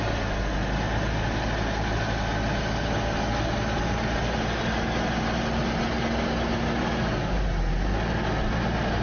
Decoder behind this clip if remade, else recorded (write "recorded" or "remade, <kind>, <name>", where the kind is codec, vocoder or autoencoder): recorded